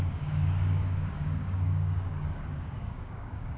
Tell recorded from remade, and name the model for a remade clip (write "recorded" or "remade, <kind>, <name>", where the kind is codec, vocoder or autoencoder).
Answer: remade, codec, DAC